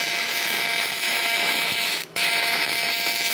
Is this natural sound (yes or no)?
no